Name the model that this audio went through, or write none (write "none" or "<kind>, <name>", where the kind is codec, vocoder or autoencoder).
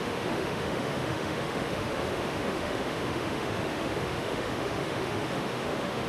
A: autoencoder, DAC-VAE